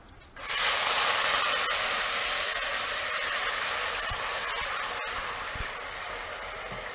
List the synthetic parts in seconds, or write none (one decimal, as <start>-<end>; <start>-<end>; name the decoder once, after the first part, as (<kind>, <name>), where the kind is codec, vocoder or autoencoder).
none